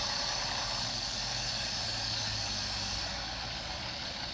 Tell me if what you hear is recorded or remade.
remade